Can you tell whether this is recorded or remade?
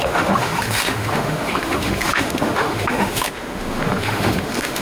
remade